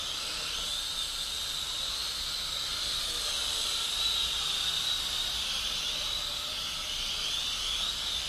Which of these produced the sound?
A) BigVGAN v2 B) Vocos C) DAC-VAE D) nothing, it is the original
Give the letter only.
A